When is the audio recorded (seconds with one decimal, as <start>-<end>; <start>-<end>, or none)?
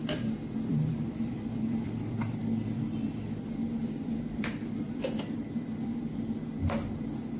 2.4-3.6; 6.0-7.4